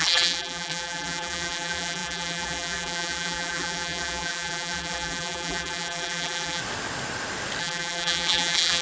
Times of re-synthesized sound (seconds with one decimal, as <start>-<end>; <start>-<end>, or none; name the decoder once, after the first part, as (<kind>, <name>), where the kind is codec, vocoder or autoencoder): 0.0-6.6 (vocoder, BigVGAN v2); 7.6-8.8